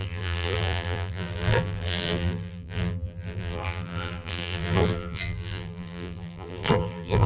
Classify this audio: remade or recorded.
remade